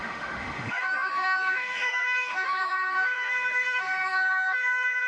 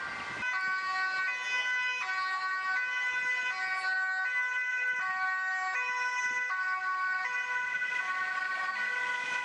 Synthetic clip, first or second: first